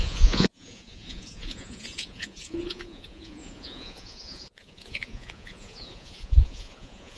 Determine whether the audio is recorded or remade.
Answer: remade